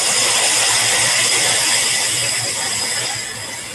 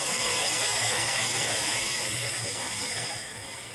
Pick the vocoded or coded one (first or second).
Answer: second